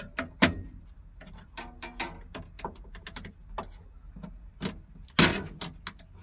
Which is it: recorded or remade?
recorded